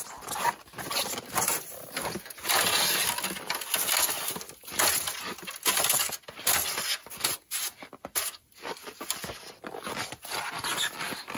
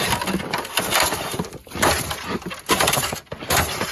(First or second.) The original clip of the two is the first